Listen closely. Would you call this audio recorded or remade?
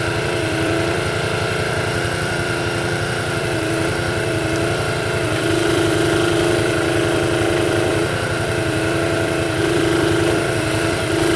remade